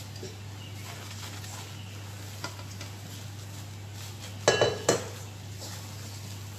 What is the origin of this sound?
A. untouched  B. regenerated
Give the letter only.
A